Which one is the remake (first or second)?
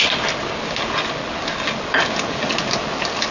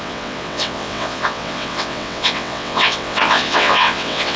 second